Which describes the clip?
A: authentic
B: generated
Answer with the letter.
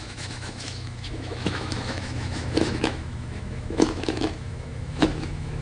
B